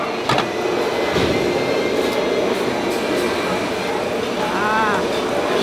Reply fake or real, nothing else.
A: real